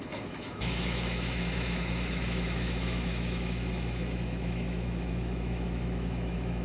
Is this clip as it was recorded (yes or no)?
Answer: no